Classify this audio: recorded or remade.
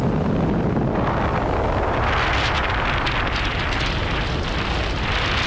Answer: recorded